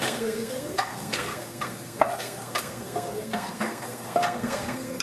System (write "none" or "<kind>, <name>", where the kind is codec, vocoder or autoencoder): codec, SNAC